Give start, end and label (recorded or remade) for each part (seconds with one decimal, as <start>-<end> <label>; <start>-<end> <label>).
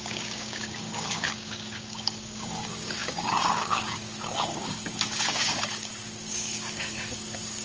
0.0-7.6 remade